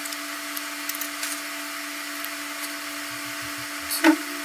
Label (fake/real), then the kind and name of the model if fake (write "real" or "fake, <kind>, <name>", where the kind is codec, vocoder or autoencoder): real